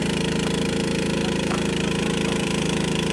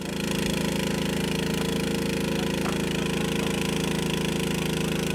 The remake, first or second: first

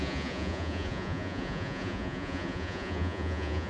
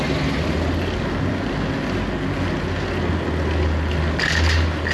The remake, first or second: first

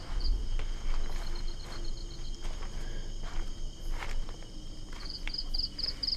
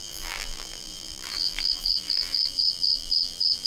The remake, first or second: second